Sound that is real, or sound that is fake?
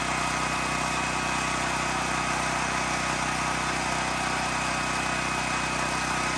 real